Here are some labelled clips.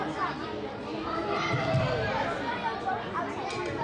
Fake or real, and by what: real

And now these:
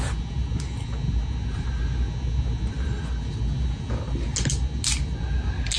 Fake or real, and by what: real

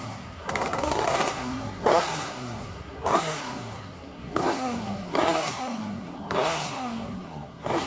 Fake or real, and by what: fake, codec, SNAC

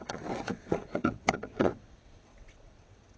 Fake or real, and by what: fake, vocoder, WaveNeXt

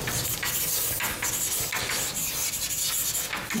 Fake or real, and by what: real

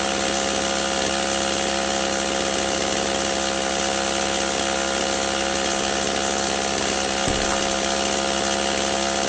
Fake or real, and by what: real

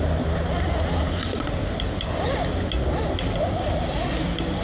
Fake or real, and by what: real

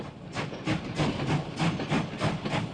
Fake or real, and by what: real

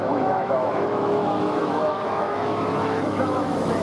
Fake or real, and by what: fake, autoencoder, DAC-VAE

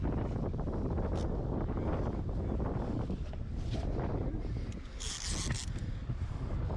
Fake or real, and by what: real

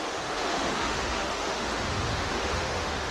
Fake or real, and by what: fake, autoencoder, DAC-VAE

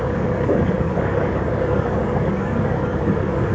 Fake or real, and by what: fake, codec, DAC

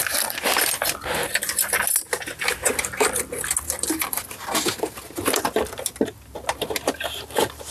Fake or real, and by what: real